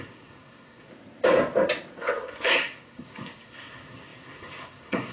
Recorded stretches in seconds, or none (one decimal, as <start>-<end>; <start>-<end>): 0.9-2.0